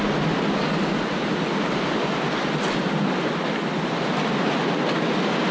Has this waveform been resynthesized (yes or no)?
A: no